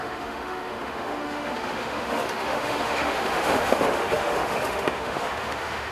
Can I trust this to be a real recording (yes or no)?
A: no